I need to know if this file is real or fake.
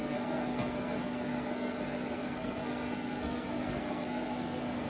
fake